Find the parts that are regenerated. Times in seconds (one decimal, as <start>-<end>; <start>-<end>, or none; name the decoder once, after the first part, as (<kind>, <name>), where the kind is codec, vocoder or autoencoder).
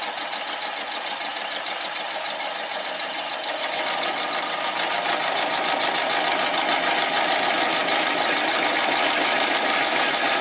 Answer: 1.3-3.3 (vocoder, BigVGAN v2)